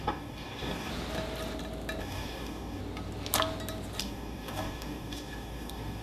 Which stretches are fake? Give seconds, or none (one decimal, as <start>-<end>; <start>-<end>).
0.0-0.9; 2.0-2.8; 4.0-6.0